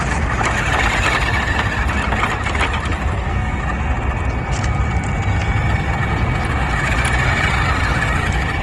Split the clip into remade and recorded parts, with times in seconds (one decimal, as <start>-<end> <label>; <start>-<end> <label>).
0.0-3.1 recorded; 3.1-3.6 remade; 3.6-8.6 recorded